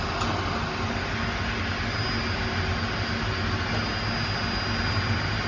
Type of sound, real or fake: real